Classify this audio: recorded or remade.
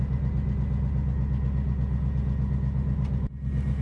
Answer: recorded